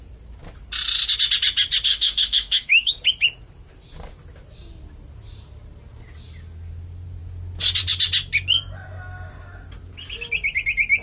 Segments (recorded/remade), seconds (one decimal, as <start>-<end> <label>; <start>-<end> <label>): 0.0-1.9 recorded; 1.9-2.9 remade; 2.9-11.0 recorded